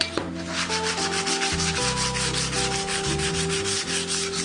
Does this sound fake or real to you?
real